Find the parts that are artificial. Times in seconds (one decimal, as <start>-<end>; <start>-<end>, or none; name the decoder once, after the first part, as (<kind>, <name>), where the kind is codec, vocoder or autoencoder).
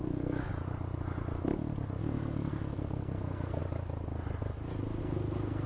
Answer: 0.0-0.5 (codec, SNAC); 2.0-3.6; 5.0-5.7